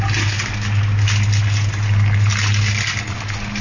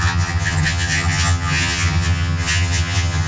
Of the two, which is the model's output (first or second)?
second